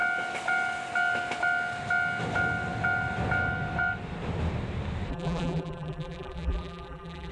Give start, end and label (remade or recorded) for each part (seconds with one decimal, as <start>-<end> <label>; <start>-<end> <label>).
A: 0.0-5.1 recorded; 5.1-7.3 remade